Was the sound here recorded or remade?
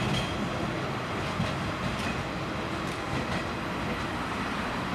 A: recorded